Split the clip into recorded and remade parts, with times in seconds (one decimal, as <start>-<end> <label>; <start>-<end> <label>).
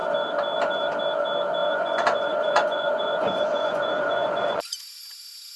0.0-1.6 recorded; 1.6-5.0 remade; 5.0-5.6 recorded